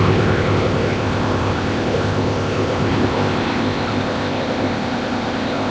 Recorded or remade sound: remade